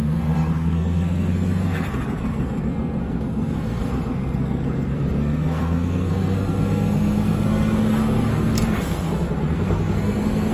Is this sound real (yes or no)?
no